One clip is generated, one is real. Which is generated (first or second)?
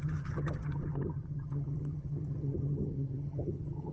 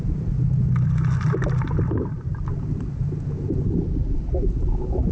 first